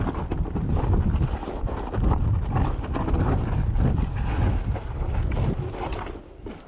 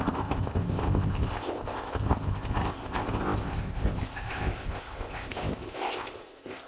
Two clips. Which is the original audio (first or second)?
first